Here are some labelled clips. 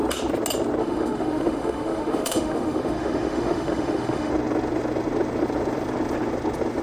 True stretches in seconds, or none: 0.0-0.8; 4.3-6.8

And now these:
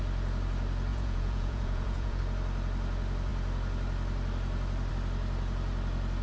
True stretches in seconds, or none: 0.0-0.9; 2.2-6.2

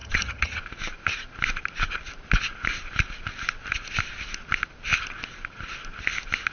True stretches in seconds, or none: 0.6-6.5

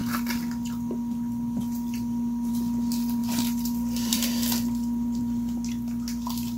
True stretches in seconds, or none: 0.0-3.2; 5.2-6.6

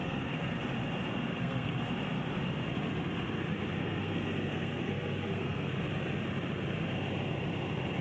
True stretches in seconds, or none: 0.6-1.1; 1.9-3.8; 5.8-8.0

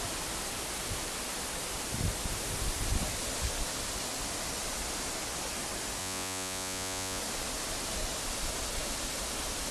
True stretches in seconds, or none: 0.0-6.0; 7.2-9.7